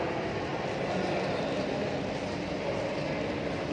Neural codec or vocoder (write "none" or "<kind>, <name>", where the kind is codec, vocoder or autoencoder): none